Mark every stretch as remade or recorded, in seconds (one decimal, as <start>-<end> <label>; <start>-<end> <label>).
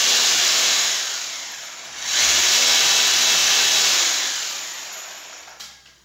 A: 0.0-0.5 recorded; 0.5-1.0 remade; 1.0-6.0 recorded